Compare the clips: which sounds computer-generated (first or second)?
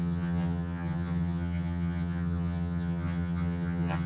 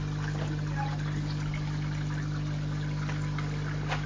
first